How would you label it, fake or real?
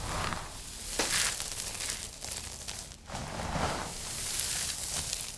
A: real